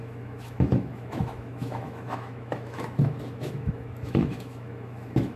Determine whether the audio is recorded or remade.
remade